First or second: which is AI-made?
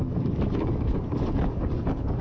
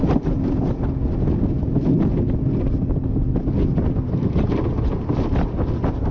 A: first